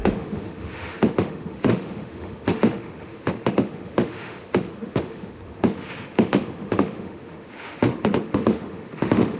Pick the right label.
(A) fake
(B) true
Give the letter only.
A